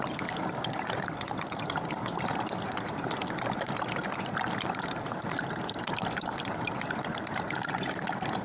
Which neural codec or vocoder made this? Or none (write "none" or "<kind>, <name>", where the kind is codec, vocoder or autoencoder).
none